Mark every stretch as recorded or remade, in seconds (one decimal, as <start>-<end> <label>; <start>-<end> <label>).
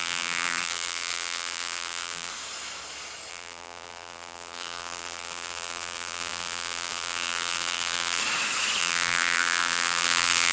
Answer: 0.0-2.3 remade; 2.3-3.3 recorded; 3.3-8.2 remade; 8.2-8.8 recorded; 8.8-10.5 remade